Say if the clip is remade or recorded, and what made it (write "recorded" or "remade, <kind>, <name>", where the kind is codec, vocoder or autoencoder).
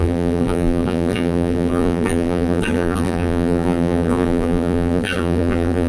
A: remade, vocoder, BigVGAN v2